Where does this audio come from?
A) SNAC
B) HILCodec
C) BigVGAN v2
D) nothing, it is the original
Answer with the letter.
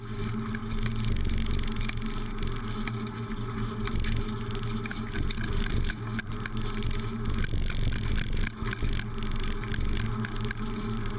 D